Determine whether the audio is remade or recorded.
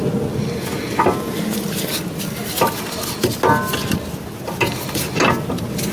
recorded